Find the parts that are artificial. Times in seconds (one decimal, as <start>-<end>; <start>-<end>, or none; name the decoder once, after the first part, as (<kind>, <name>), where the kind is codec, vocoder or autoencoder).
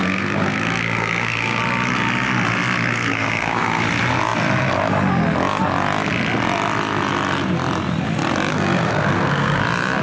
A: 0.0-1.6 (codec, SNAC); 2.9-3.8; 8.5-9.6